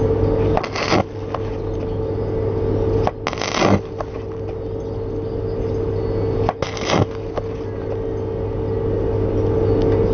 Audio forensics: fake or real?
real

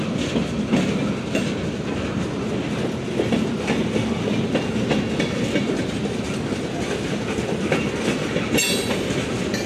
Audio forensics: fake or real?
real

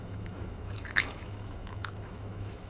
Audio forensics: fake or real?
fake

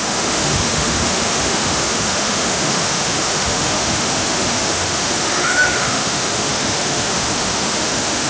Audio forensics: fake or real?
fake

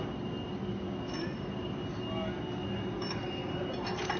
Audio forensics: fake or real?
real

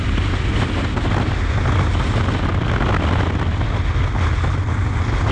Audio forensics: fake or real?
real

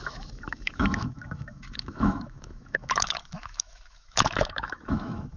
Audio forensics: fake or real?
fake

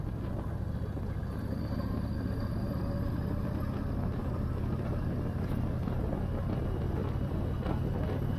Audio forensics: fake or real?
real